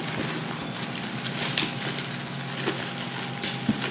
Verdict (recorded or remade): recorded